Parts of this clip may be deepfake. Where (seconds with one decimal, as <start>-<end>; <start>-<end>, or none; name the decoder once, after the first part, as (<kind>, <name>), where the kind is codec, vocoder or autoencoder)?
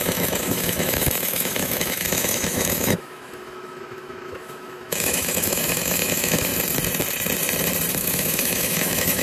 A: 0.0-6.5 (autoencoder, DAC-VAE); 7.9-9.2